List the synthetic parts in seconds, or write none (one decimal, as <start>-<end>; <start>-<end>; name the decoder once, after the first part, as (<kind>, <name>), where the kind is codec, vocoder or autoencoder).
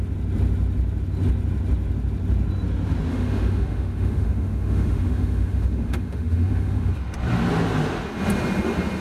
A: 3.1-6.9 (autoencoder, DAC-VAE)